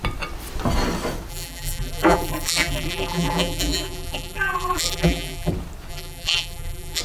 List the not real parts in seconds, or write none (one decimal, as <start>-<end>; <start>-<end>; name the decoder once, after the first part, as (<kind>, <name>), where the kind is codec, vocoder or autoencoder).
1.3-5.5 (vocoder, BigVGAN v2); 5.9-7.0